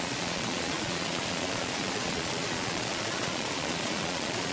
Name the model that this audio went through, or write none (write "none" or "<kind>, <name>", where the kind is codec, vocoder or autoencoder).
vocoder, Vocos